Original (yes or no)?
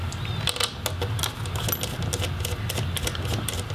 yes